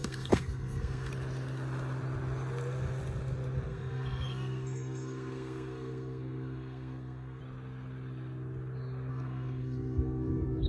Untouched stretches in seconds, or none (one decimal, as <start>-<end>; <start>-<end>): 1.1-3.7; 7.4-9.1